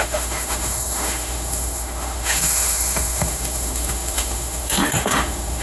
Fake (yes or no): yes